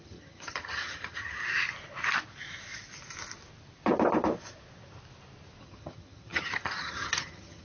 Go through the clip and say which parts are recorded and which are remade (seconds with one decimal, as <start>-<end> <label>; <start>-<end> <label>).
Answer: 0.0-1.4 remade; 1.4-5.6 recorded; 5.6-7.6 remade